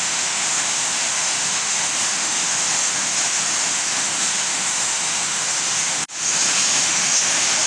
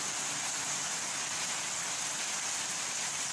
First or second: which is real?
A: second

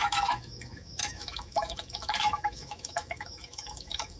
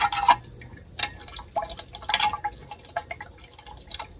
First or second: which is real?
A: second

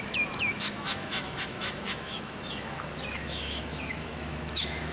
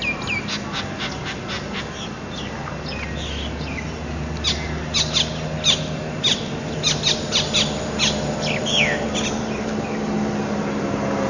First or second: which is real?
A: second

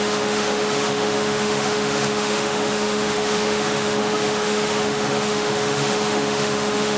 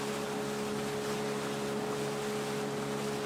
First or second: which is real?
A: second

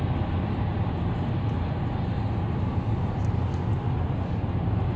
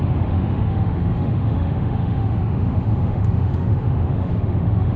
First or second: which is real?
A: first